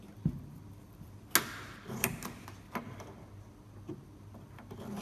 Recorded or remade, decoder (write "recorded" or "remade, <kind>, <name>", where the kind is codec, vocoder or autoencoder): recorded